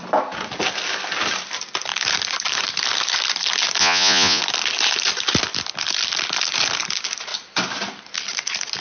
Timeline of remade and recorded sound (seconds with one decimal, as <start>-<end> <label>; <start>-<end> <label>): 0.0-3.8 recorded; 3.8-4.4 remade; 4.4-8.8 recorded